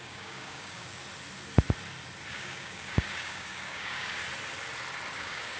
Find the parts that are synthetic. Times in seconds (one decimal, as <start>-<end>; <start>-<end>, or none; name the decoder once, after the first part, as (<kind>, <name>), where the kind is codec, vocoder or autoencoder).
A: 0.0-1.0 (codec, DAC); 2.3-4.2; 5.1-5.6

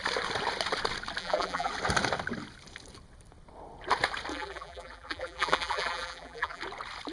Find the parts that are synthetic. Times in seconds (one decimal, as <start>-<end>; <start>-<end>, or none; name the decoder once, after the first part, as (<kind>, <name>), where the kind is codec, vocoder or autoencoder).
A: 1.2-1.7 (vocoder, BigVGAN v2); 4.3-6.6

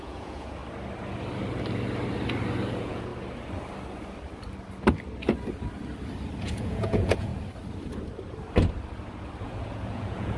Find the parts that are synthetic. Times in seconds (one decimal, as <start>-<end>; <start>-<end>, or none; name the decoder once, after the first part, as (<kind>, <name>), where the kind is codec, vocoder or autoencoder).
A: 0.0-0.6 (vocoder, Vocos); 2.7-3.1; 6.4-7.3; 9.4-10.4

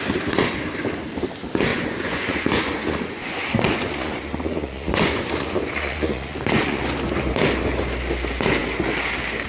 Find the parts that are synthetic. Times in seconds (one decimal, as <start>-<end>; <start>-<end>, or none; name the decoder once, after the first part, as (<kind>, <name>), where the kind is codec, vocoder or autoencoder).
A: 1.7-6.8 (vocoder, Vocos)

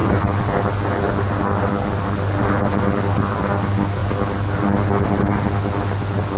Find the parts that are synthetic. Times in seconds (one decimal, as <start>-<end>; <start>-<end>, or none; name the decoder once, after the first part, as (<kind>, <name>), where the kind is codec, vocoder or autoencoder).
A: none

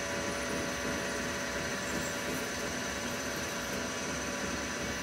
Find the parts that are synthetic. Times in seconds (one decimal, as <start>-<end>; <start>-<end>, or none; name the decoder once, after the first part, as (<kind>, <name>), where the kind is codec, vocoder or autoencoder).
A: 1.7-5.0 (vocoder, BigVGAN v2)

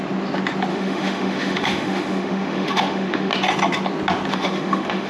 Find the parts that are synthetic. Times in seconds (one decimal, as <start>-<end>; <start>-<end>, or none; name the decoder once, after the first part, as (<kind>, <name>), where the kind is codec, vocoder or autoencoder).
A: 0.7-3.3 (autoencoder, DAC-VAE); 4.3-5.1

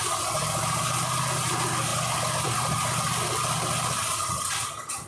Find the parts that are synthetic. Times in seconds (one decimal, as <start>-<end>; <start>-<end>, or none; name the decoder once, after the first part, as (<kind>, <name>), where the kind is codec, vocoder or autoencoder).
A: none